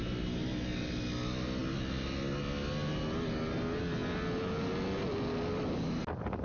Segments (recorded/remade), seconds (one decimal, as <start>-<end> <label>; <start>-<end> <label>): 0.0-6.4 recorded